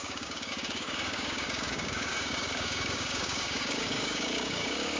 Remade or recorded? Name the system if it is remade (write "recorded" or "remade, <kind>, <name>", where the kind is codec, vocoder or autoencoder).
remade, codec, DAC